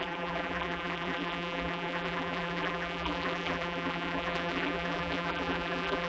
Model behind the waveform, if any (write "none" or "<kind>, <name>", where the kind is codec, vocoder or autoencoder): vocoder, BigVGAN v2